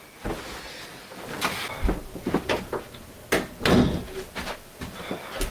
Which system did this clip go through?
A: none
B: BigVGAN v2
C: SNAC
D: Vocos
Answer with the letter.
A